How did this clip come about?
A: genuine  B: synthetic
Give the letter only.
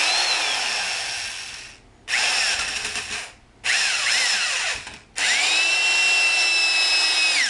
A